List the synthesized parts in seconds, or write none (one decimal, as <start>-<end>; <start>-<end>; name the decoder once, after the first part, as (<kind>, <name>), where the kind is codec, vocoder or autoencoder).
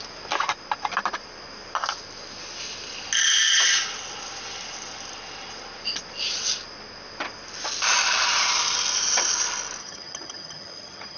9.8-11.2 (vocoder, HiFi-GAN)